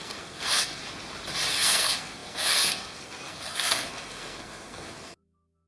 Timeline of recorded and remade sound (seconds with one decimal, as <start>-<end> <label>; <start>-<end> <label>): 0.0-0.8 remade; 0.8-1.5 recorded; 1.5-5.7 remade